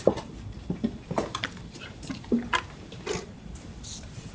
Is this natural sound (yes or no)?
yes